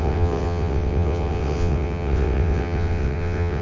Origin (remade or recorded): remade